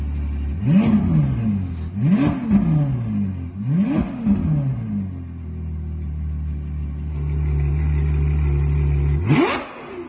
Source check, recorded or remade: recorded